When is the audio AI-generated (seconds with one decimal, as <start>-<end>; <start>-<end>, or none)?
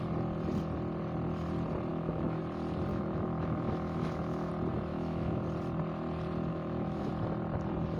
1.9-2.4; 2.9-4.5; 4.9-5.4; 6.5-7.1